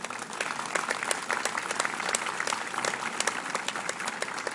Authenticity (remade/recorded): recorded